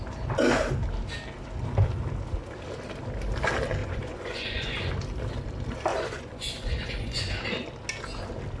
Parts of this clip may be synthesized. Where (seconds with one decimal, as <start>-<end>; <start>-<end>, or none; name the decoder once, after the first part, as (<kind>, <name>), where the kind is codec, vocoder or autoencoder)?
3.8-4.9 (vocoder, Vocos); 5.9-7.3